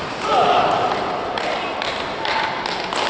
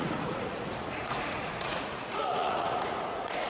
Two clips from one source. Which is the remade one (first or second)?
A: second